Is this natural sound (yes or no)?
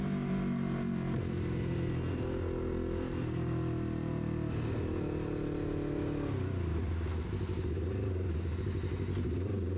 yes